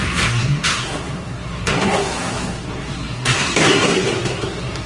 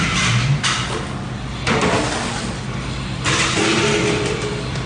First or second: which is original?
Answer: second